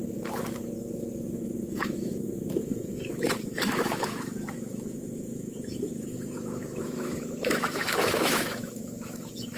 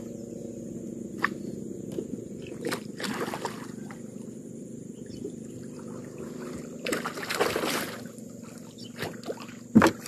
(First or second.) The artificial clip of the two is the first